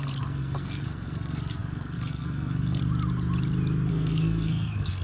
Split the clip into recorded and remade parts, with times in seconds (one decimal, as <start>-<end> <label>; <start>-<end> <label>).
0.0-2.8 remade; 2.8-3.9 recorded; 3.9-5.0 remade